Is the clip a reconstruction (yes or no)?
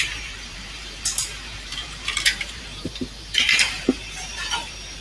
yes